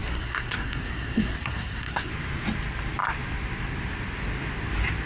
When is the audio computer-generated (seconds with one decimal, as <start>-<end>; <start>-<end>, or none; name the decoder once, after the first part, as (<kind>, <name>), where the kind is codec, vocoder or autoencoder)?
0.0-2.1 (codec, SNAC)